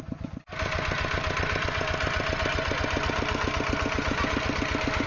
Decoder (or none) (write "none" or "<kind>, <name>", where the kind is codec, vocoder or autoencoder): none